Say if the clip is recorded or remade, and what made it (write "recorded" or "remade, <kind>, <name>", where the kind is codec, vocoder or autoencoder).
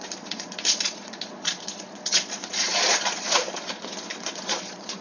remade, vocoder, Vocos